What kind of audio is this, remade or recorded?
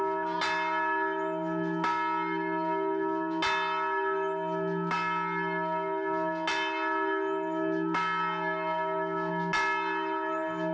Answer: recorded